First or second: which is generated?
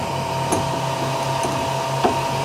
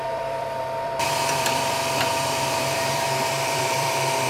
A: second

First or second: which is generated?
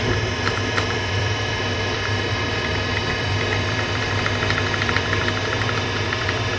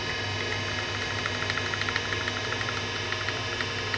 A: first